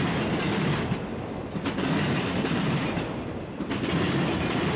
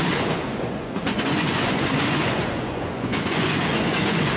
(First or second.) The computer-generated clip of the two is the second